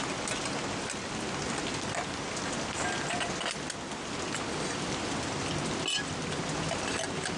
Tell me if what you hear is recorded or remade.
recorded